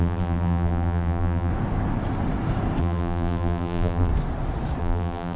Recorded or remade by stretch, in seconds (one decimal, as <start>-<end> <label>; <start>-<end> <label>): 0.0-1.5 remade; 1.5-2.8 recorded; 2.8-4.1 remade; 4.1-4.8 recorded; 4.8-5.4 remade